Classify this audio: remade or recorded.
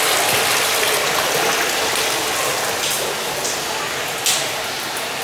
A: recorded